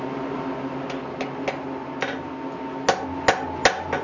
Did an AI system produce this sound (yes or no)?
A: no